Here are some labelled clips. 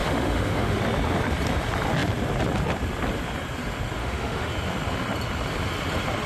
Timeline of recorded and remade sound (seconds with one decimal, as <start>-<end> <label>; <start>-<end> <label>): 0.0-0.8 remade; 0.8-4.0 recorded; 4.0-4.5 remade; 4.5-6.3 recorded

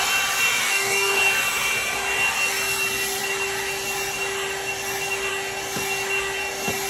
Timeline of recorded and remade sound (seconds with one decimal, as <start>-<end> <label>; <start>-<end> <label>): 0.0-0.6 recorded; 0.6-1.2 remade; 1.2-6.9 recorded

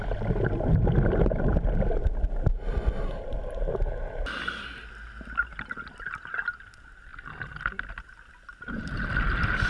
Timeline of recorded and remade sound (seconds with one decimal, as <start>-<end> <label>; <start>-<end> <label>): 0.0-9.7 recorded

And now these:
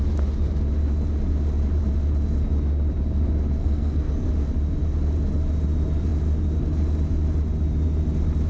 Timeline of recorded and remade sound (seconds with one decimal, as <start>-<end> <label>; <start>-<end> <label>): 0.0-3.6 recorded; 3.6-4.3 remade; 4.3-8.5 recorded

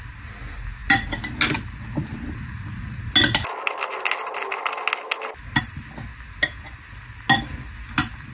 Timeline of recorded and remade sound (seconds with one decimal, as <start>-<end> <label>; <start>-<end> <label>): 0.0-8.3 recorded

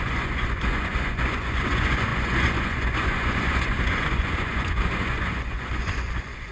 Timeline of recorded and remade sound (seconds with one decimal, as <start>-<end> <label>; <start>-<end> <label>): 0.0-6.5 remade

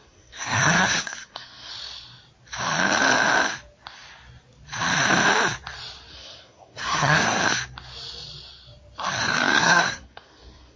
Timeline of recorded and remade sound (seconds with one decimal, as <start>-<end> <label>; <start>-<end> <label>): 0.0-1.7 remade; 1.7-6.1 recorded; 6.1-7.4 remade; 7.4-9.2 recorded; 9.2-10.8 remade

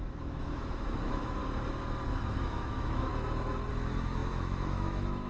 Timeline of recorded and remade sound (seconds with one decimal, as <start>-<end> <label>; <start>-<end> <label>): 0.0-1.4 remade; 1.4-2.4 recorded; 2.4-3.1 remade; 3.1-3.7 recorded; 3.7-5.3 remade